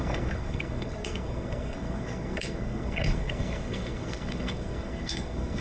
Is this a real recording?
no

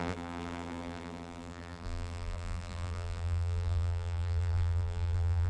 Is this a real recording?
no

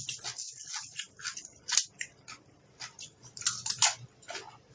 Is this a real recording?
yes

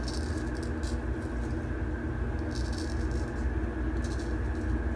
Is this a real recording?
yes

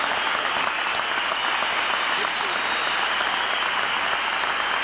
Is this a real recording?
yes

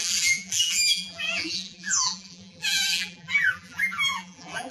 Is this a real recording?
no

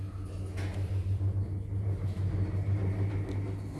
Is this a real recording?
yes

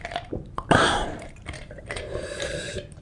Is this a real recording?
no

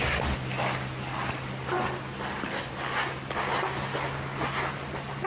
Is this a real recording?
yes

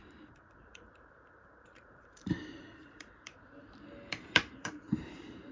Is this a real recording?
no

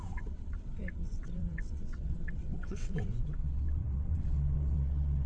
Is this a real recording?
no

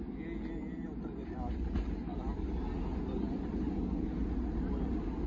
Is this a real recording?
yes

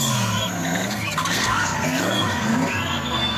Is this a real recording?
no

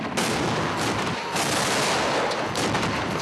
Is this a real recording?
yes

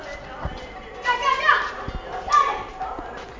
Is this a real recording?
yes